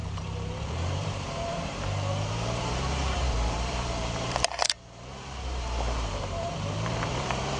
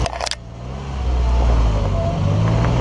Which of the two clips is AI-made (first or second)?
first